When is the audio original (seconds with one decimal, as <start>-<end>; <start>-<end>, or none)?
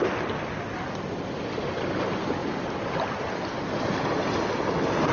0.0-5.1